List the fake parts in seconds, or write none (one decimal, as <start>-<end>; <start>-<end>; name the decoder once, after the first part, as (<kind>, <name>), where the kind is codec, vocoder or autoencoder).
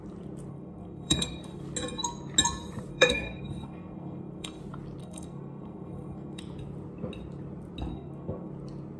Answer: 0.5-1.6 (codec, SNAC); 2.9-4.6; 5.0-6.4; 7.9-8.5